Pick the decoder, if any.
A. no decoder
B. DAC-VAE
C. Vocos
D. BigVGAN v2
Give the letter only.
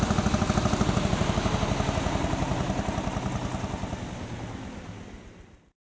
A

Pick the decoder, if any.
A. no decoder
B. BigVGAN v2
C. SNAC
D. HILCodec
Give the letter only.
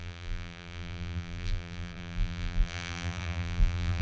B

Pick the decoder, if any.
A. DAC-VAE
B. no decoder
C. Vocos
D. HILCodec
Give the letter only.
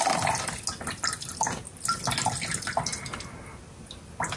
B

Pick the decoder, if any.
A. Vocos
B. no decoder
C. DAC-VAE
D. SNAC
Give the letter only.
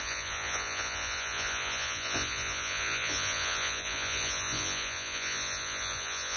A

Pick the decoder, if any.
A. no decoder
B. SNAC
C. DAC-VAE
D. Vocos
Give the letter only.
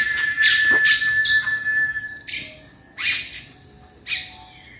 A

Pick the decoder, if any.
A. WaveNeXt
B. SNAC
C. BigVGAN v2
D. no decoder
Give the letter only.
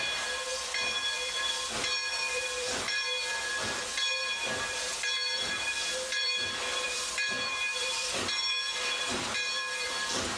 C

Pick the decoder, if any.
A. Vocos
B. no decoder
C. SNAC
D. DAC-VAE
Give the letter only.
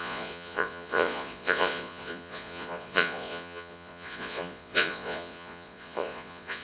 A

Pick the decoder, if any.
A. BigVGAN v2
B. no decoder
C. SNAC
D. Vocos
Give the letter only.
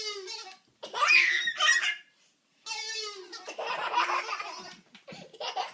B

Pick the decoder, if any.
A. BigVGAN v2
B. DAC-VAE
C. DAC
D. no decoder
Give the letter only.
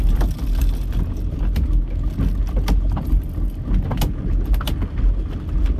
D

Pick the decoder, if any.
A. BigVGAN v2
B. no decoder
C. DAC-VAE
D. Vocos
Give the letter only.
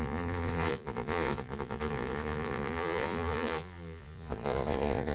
D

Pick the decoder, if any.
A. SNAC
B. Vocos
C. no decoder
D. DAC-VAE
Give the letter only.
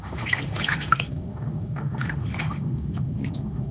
D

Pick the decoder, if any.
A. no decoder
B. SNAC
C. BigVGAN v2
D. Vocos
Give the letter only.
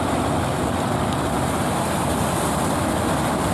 A